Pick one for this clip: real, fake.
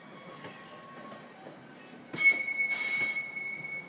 real